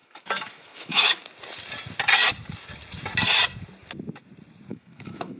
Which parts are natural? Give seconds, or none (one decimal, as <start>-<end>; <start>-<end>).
1.2-4.7